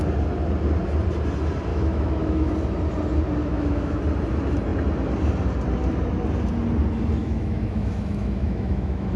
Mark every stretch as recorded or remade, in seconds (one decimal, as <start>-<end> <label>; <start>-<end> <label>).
0.0-1.7 recorded; 1.7-2.5 remade; 2.5-3.4 recorded; 3.4-4.0 remade; 4.0-7.2 recorded; 7.2-9.2 remade